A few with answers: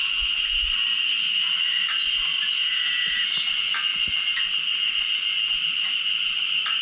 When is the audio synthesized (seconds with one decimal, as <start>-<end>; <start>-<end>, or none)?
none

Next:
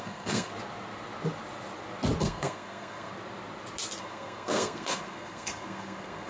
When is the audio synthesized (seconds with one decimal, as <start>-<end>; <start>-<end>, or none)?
0.0-0.5; 2.2-3.1; 4.0-6.3

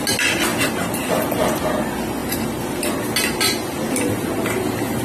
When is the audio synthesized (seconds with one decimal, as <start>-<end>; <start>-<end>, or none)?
none

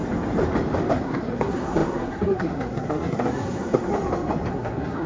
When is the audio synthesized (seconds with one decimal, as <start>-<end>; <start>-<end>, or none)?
0.9-3.9; 4.5-5.1

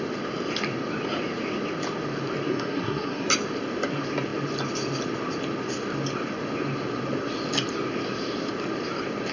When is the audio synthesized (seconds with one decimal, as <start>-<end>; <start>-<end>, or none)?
2.5-3.3

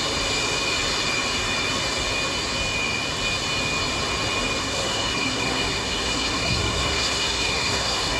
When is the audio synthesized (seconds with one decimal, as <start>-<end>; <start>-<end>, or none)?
4.6-8.2